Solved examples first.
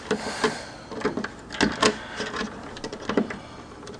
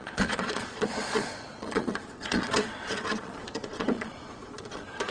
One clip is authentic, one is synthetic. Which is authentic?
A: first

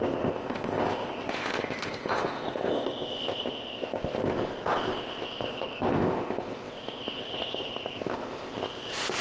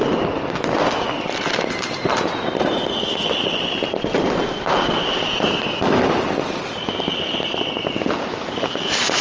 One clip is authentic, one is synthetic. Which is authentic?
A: second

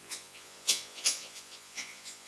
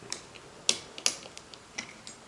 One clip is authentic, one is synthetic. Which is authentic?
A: second